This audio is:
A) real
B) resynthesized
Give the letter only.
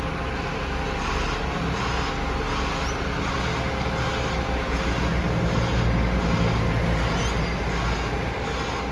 A